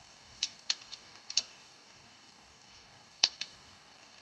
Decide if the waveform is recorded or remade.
remade